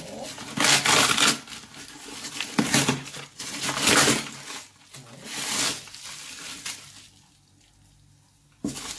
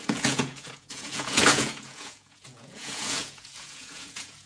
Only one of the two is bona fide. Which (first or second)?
first